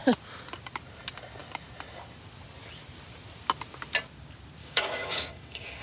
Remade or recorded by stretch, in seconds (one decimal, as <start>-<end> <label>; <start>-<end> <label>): 0.0-4.6 recorded; 4.6-5.8 remade